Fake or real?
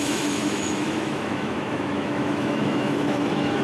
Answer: fake